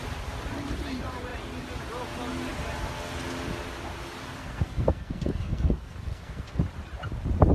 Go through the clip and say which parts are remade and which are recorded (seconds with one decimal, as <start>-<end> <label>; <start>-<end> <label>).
0.0-4.4 recorded; 4.4-6.6 remade; 6.6-7.5 recorded